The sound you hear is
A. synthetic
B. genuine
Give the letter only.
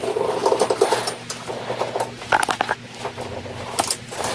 B